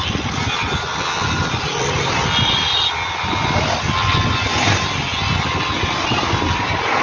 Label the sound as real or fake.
real